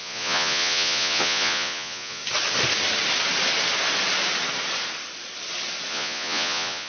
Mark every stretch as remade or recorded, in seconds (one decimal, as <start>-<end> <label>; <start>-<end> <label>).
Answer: 0.0-2.2 remade; 2.2-5.9 recorded; 5.9-6.9 remade